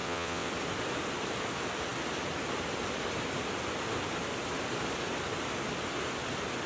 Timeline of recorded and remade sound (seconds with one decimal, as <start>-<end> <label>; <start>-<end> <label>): 0.0-0.5 remade; 0.5-6.7 recorded

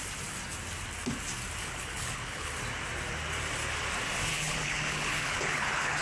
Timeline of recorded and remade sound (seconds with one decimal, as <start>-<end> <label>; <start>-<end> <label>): 0.0-1.6 recorded; 1.6-2.5 remade; 2.5-4.3 recorded; 4.3-6.0 remade

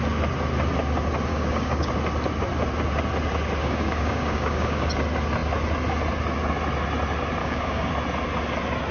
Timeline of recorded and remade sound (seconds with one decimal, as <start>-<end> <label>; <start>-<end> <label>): 0.0-1.3 recorded; 1.3-1.9 remade; 1.9-3.6 recorded; 3.6-4.9 remade; 4.9-7.4 recorded; 7.4-7.9 remade; 7.9-8.9 recorded

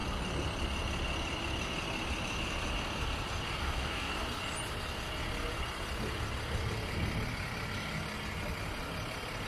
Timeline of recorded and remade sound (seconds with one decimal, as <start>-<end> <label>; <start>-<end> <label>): 0.0-3.6 recorded; 3.6-4.1 remade; 4.1-9.5 recorded

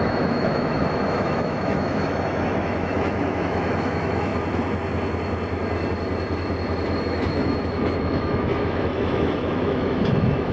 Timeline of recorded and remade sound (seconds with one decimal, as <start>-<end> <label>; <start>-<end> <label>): 0.0-4.3 remade; 4.3-7.0 recorded; 7.0-10.5 remade

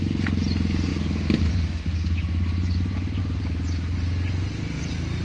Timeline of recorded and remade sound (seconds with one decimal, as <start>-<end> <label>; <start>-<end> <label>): 0.0-5.2 recorded

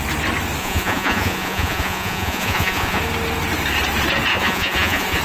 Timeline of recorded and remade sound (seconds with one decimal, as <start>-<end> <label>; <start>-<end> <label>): 0.0-0.6 recorded; 0.6-3.0 remade; 3.0-4.3 recorded; 4.3-5.2 remade

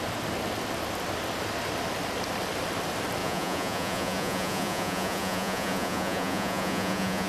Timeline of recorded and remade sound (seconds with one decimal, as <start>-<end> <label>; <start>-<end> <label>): 0.0-3.2 recorded; 3.2-7.3 remade